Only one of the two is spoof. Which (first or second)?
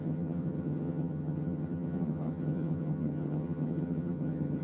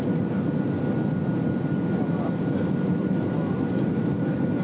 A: first